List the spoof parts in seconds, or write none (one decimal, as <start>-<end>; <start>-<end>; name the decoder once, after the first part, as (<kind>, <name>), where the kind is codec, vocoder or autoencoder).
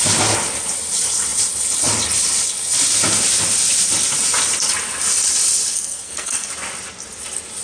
5.7-6.5 (codec, SNAC)